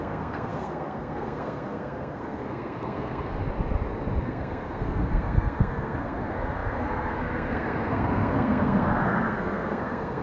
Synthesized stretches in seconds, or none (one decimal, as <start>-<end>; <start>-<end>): 0.0-3.4; 4.2-10.2